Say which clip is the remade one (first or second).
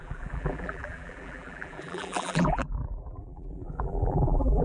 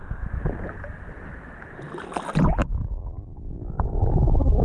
first